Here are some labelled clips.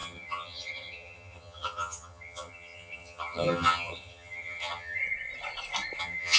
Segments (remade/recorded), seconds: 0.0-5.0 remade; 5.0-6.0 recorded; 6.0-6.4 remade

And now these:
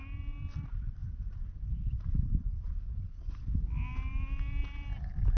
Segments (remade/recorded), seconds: 0.0-5.4 recorded

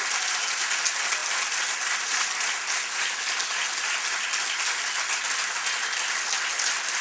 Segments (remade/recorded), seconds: 0.0-7.0 recorded

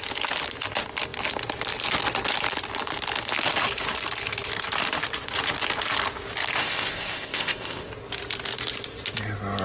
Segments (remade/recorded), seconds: 0.0-6.6 recorded; 6.6-7.9 remade; 7.9-9.6 recorded

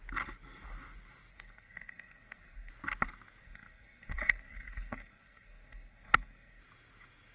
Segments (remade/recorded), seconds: 0.0-1.3 recorded; 1.3-2.7 remade; 2.7-3.4 recorded; 3.4-6.6 remade; 6.6-7.3 recorded